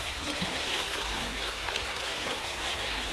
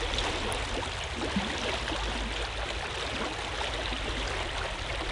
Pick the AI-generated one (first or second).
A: first